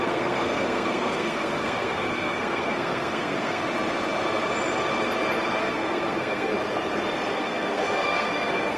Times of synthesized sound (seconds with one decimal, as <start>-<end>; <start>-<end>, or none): 0.0-3.6; 5.6-6.5; 7.3-8.8